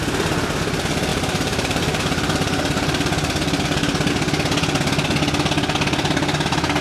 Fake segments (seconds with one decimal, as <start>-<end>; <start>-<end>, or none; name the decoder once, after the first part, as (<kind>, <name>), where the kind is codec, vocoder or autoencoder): 1.1-4.1 (vocoder, BigVGAN v2)